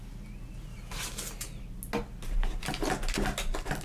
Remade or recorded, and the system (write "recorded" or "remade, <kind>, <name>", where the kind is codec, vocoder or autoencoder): recorded